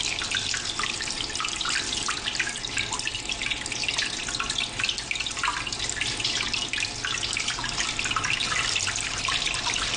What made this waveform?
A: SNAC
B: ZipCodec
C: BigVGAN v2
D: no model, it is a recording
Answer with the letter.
D